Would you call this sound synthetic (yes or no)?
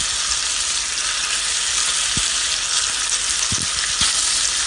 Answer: no